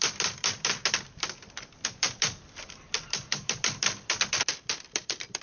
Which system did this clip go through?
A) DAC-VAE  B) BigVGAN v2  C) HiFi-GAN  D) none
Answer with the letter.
B